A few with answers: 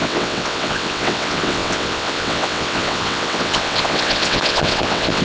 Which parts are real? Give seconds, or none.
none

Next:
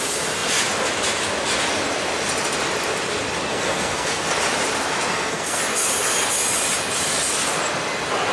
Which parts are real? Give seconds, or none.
0.0-3.5; 4.3-5.1; 5.6-8.3